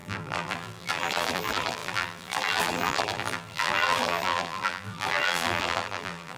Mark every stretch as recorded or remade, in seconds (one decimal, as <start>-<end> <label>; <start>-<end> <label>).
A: 0.0-6.4 remade